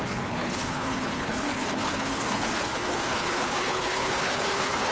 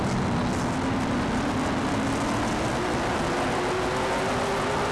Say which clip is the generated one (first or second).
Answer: first